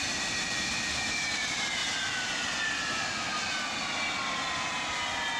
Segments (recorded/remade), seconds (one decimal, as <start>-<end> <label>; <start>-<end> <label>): 0.0-5.4 recorded